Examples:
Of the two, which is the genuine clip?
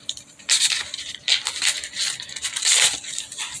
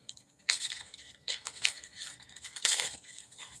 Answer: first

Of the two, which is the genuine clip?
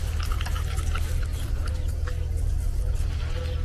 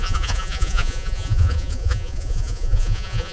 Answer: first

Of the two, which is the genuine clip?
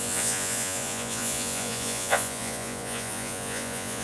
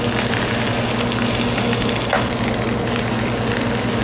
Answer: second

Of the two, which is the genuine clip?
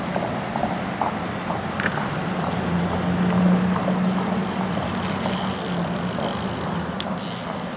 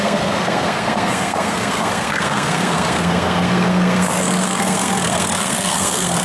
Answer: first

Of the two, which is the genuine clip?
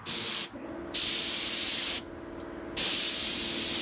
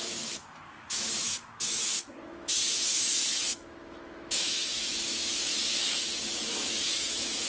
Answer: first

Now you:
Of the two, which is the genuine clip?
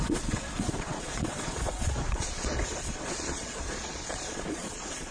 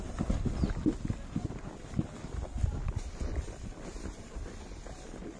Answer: second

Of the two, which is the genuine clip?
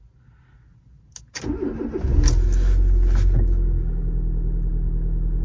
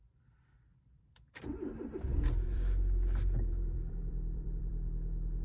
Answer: first